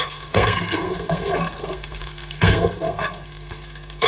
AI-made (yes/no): yes